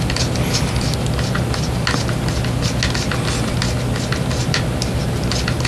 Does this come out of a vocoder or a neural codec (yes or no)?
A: no